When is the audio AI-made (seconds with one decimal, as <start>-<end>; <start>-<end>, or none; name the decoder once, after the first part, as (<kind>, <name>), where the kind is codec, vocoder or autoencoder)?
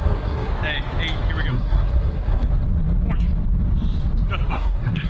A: 0.0-0.5 (codec, SNAC); 1.5-2.5; 4.5-5.1